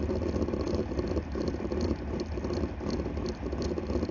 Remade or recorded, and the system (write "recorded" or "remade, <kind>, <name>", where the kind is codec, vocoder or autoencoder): recorded